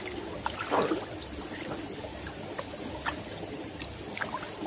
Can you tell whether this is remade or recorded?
remade